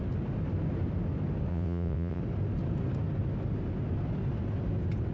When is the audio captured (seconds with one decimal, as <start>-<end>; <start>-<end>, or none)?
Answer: 0.0-1.5; 2.2-5.1